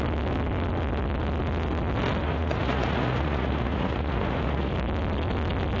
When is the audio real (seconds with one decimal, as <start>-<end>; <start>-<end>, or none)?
0.0-2.2; 4.7-5.8